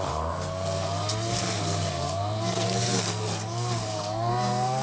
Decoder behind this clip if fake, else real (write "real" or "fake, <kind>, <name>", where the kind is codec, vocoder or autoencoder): fake, codec, SNAC